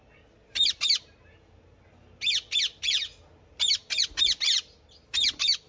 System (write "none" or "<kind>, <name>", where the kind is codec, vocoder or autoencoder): none